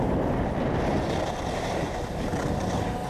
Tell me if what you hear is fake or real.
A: real